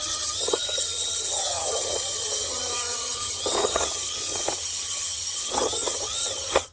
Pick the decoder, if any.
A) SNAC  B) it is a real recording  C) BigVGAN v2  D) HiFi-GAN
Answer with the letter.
D